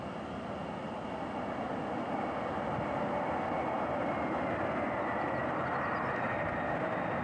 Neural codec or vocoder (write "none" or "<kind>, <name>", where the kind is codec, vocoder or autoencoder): none